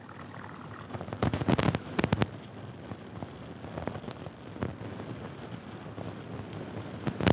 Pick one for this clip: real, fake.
real